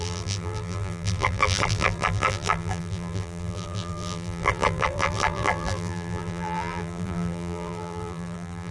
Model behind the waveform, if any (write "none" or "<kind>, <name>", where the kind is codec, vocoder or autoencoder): vocoder, BigVGAN v2